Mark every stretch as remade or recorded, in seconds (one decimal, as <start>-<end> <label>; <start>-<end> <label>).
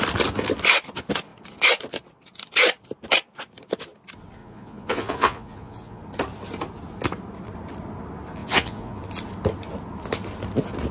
0.0-4.4 recorded; 4.4-6.0 remade; 6.0-8.4 recorded; 8.4-9.0 remade; 9.0-10.9 recorded